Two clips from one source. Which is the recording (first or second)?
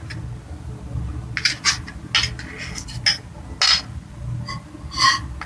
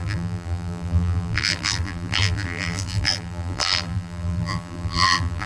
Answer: first